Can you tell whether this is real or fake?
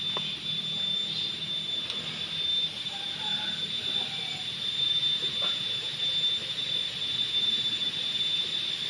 real